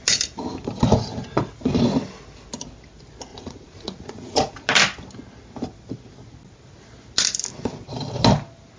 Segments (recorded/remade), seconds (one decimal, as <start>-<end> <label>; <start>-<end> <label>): 0.0-3.3 recorded; 3.3-4.5 remade; 4.5-8.8 recorded